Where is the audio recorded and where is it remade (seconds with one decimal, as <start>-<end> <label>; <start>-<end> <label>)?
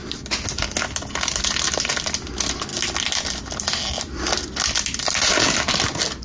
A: 0.0-6.2 recorded